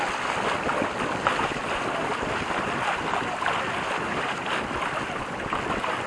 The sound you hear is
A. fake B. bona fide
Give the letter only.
B